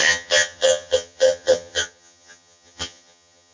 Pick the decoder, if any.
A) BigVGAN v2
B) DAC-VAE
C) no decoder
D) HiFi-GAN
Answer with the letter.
D